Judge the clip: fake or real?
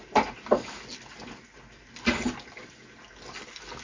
real